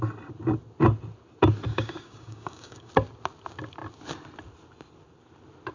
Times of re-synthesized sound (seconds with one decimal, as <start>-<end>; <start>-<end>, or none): 1.7-2.9